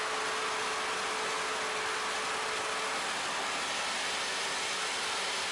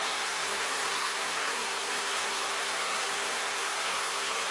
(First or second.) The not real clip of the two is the second